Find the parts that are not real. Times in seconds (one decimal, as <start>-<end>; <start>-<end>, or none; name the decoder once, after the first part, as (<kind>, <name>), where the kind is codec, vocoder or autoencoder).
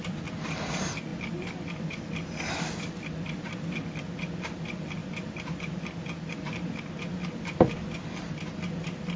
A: none